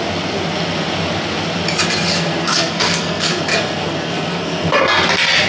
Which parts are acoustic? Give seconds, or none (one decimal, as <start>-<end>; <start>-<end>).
0.0-2.1; 4.7-5.5